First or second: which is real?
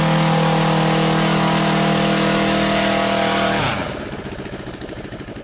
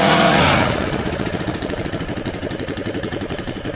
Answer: first